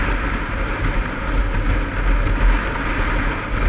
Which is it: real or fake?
real